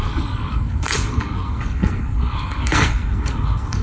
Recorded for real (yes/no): no